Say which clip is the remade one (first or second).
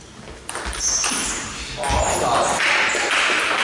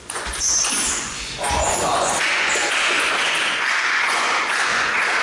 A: second